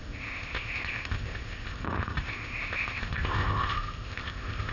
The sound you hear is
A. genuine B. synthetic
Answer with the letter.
B